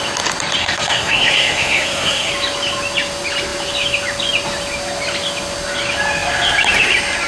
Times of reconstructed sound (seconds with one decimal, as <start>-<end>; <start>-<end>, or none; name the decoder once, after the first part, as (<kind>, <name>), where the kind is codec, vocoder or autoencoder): 0.6-2.3 (codec, SNAC)